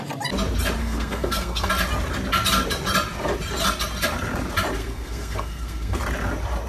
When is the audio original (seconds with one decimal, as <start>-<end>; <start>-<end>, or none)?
0.0-0.8; 1.7-4.8; 6.0-6.7